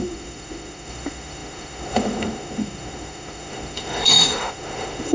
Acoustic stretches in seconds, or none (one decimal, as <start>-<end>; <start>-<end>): none